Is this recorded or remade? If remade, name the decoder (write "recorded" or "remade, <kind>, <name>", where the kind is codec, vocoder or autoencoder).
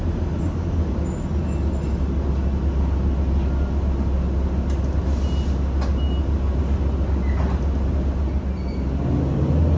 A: recorded